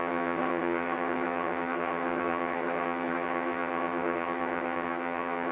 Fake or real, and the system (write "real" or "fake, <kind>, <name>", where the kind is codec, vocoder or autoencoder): fake, vocoder, HiFi-GAN